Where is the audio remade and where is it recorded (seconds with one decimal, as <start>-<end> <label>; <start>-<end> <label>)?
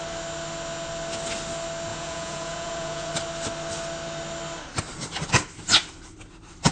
0.0-1.9 recorded; 1.9-3.1 remade; 3.1-6.7 recorded